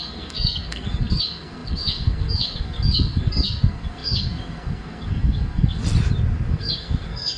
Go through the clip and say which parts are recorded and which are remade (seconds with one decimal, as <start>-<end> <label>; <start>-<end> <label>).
0.0-5.8 remade; 5.8-6.5 recorded; 6.5-7.4 remade